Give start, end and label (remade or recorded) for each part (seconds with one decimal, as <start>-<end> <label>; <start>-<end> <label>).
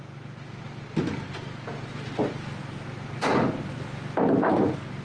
0.0-5.0 recorded